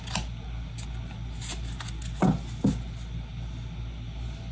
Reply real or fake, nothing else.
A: real